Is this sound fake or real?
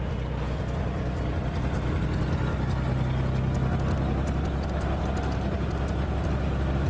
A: real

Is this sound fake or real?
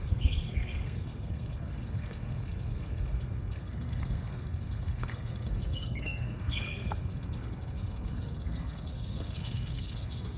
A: fake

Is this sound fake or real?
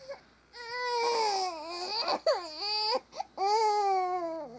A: real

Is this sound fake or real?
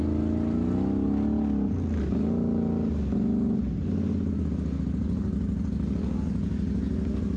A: real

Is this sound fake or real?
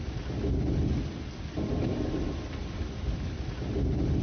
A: real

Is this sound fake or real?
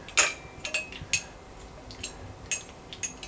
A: real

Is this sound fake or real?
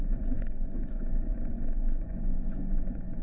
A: fake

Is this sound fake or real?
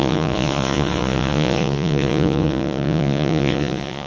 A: fake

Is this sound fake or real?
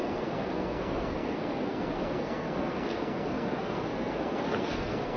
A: fake